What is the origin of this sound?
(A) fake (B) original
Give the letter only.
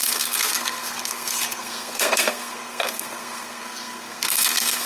A